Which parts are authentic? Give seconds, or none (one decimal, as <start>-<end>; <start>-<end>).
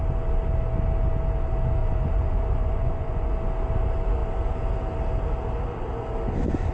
0.0-1.8; 3.3-6.7